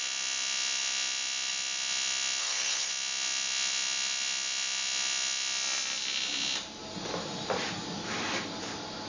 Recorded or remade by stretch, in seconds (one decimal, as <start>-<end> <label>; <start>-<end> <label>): 0.0-2.4 recorded; 2.4-2.9 remade; 2.9-9.1 recorded